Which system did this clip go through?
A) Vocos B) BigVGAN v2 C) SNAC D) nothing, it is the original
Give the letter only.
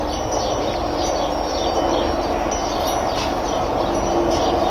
D